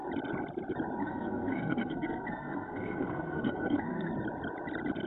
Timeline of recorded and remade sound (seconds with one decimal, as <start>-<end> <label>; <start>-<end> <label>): 0.0-1.0 recorded; 1.0-4.1 remade; 4.1-5.1 recorded